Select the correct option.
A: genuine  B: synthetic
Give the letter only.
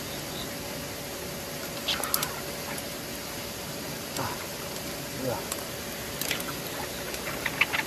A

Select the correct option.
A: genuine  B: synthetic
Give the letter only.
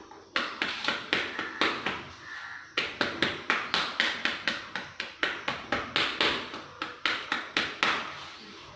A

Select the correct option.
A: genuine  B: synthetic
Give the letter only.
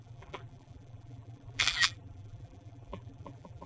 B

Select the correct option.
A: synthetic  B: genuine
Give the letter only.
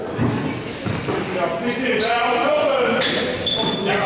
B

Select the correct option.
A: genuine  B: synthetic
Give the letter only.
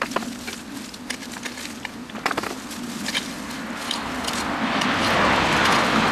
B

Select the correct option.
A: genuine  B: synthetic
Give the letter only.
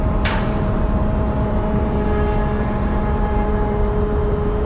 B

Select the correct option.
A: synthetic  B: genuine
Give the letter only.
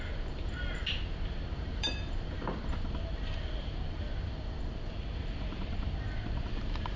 A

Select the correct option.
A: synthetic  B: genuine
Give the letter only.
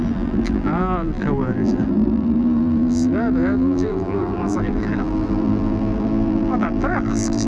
A